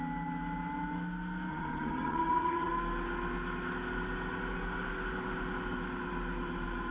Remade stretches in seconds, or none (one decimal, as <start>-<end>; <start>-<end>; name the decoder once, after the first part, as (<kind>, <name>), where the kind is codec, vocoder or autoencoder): 1.5-2.7 (vocoder, HiFi-GAN)